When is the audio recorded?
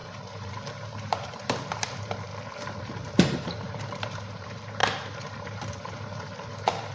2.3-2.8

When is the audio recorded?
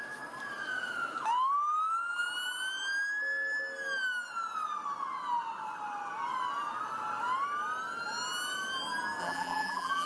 0.0-9.2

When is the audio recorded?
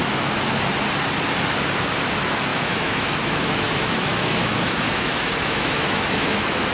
0.0-2.5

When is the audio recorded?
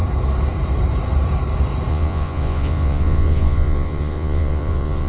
0.0-1.9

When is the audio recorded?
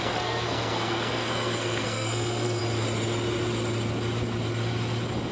2.6-5.3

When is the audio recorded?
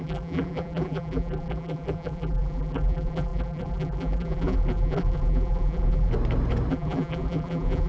6.1-6.7